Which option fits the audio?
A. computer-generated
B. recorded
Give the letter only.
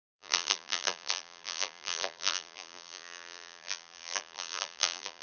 A